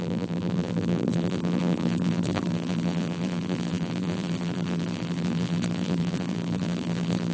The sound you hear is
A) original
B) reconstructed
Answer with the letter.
B